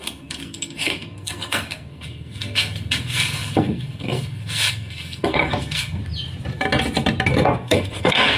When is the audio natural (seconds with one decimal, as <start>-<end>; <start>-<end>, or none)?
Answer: 6.0-7.3

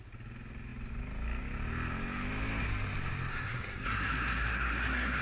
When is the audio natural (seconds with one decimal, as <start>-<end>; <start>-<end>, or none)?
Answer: 0.0-3.3

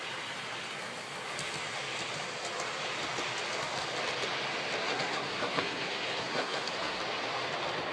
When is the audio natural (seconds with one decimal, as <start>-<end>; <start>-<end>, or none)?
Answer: 0.0-4.8; 7.0-7.9

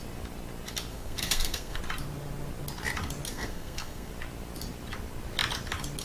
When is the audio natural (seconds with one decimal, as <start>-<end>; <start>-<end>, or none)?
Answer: 0.0-0.9; 1.8-3.3; 4.1-6.0